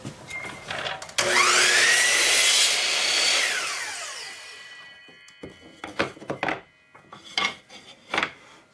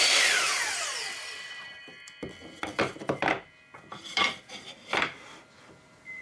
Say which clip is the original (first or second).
first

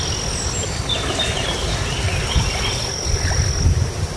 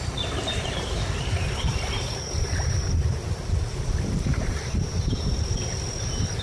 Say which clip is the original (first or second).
first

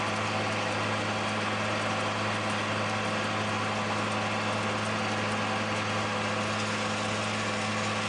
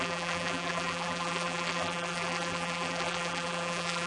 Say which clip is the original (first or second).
first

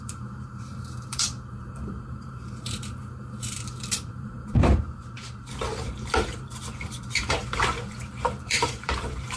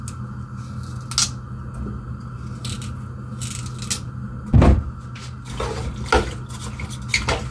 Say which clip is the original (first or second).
second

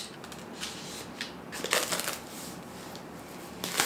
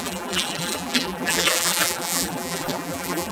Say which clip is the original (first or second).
first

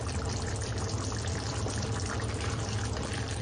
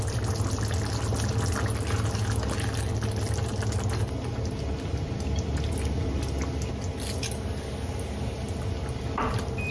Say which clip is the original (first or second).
second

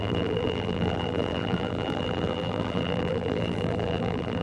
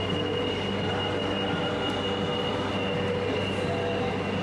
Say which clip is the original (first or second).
second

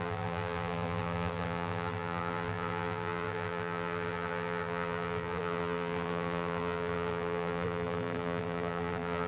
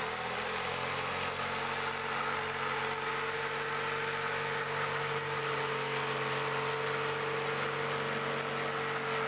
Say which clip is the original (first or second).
second